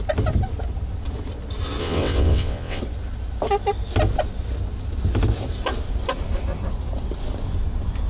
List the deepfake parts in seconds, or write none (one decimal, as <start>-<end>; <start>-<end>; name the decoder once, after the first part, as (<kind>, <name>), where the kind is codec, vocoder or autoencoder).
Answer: 1.8-2.8 (vocoder, WaveNeXt)